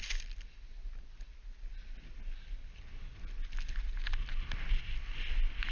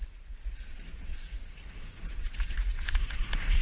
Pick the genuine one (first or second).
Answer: first